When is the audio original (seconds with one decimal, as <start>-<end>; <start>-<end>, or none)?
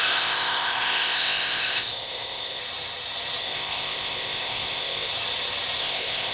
2.6-3.4; 5.1-5.8